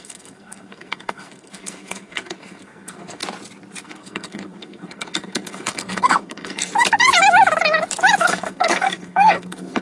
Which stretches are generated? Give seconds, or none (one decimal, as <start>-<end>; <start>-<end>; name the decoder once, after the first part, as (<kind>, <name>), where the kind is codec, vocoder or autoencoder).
0.0-3.2 (codec, SNAC); 3.8-6.7; 8.2-9.8